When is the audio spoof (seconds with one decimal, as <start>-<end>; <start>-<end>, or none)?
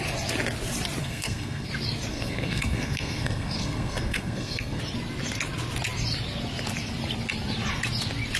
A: 1.0-1.7; 2.1-4.8